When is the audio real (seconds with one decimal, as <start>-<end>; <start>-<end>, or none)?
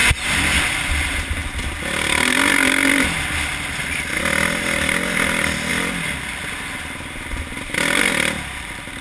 0.0-9.0